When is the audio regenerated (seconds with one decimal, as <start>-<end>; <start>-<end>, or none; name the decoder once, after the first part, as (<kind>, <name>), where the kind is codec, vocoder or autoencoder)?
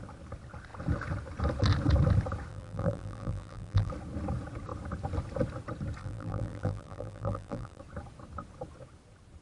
2.5-3.9 (vocoder, BigVGAN v2); 6.0-7.8